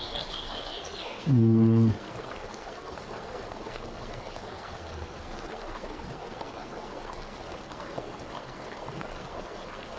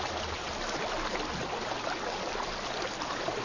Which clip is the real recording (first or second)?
second